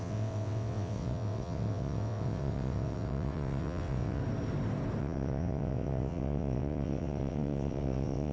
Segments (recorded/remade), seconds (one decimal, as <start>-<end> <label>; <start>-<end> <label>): 0.0-4.2 remade; 4.2-5.0 recorded; 5.0-8.3 remade